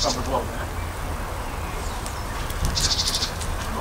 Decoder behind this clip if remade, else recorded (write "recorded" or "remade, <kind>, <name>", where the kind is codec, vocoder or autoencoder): recorded